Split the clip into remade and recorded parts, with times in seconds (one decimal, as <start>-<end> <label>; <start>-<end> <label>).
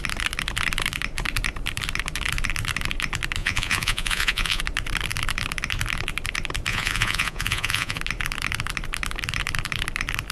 0.0-3.4 recorded; 3.4-4.6 remade; 4.6-6.7 recorded; 6.7-8.0 remade; 8.0-10.3 recorded